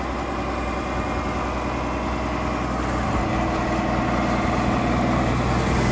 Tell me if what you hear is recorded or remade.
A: recorded